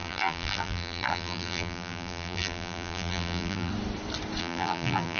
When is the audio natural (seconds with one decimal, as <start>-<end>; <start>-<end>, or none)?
3.7-4.4